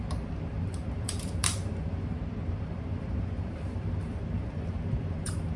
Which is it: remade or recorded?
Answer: remade